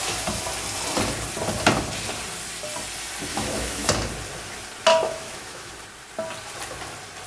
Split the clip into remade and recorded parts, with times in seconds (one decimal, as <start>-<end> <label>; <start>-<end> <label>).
0.0-3.3 recorded; 3.3-3.9 remade; 3.9-4.9 recorded; 4.9-5.7 remade; 5.7-7.3 recorded